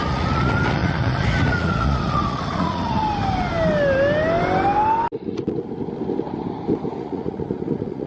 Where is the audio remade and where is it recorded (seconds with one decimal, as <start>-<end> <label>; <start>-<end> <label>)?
0.0-3.0 remade; 3.0-6.9 recorded; 6.9-8.1 remade